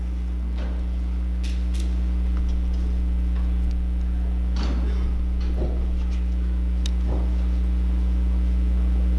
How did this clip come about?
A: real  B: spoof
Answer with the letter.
A